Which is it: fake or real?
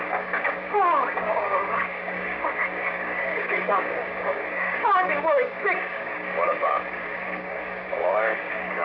fake